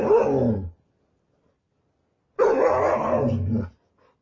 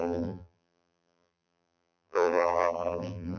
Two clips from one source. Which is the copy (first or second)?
second